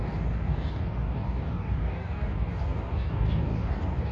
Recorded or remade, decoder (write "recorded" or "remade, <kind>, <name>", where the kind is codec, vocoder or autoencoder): remade, codec, DAC